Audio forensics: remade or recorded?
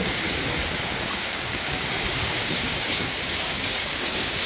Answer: remade